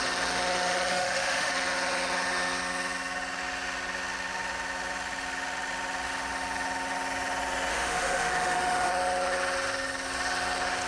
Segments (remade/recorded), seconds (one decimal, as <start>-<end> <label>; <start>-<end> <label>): 0.0-0.9 recorded; 0.9-1.5 remade; 1.5-7.7 recorded; 7.7-8.9 remade; 8.9-10.9 recorded